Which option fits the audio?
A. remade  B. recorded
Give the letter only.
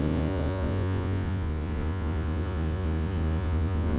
A